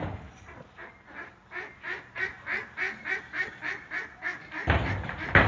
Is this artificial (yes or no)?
no